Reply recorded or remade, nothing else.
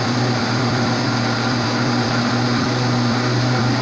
remade